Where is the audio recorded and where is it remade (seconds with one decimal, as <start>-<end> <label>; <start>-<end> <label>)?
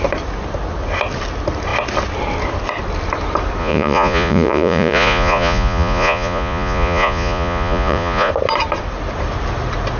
0.0-3.6 recorded; 3.6-8.3 remade; 8.3-10.0 recorded